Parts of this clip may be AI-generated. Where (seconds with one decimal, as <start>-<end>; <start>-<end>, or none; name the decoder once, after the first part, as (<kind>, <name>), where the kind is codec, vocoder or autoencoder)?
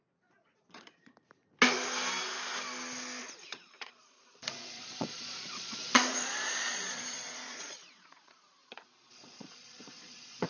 0.0-1.2 (vocoder, Vocos); 3.2-10.5